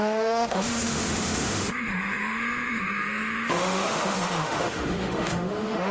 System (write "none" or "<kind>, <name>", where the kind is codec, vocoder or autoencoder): autoencoder, DAC-VAE